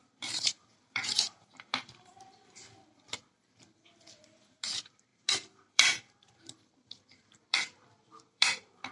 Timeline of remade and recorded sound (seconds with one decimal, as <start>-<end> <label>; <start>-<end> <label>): 0.0-2.1 remade; 2.1-4.1 recorded; 4.1-8.9 remade